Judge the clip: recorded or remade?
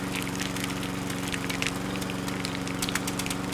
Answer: recorded